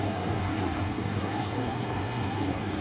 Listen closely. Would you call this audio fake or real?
fake